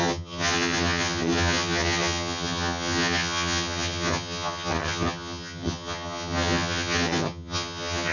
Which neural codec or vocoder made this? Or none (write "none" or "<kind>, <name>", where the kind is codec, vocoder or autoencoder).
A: vocoder, HiFi-GAN